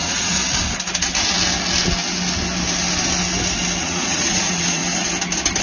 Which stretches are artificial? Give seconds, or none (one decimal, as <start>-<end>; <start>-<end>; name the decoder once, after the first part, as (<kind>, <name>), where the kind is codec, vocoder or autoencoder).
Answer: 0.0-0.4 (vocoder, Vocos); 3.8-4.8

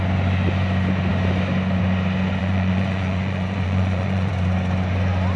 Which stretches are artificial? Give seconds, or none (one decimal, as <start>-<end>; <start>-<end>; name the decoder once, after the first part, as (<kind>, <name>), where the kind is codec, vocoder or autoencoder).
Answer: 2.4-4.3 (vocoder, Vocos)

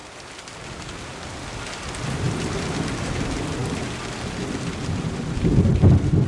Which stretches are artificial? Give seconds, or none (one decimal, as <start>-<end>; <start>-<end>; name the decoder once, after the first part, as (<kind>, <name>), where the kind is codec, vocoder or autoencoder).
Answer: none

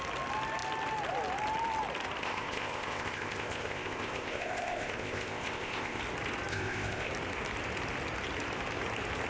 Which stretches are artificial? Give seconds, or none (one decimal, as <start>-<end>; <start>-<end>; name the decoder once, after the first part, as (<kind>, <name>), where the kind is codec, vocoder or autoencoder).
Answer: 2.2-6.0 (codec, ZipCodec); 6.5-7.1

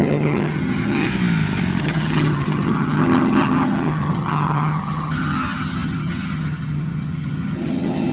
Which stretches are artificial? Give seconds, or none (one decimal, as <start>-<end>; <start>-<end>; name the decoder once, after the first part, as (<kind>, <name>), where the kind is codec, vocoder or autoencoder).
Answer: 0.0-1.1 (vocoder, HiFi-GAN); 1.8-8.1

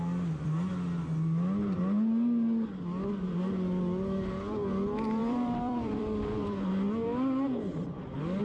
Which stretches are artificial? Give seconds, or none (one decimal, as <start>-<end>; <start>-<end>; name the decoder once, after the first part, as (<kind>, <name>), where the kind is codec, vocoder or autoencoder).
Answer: 5.2-6.7 (vocoder, BigVGAN v2)

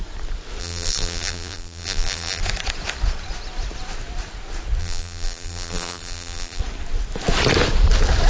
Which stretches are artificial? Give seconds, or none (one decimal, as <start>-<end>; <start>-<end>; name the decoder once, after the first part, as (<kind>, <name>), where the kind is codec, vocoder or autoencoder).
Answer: 0.6-2.4 (vocoder, BigVGAN v2); 4.8-6.6